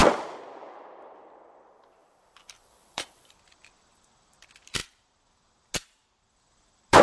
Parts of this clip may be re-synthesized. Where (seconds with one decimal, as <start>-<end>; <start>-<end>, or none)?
1.0-4.8; 5.9-7.0